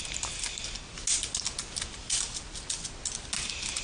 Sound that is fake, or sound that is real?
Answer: real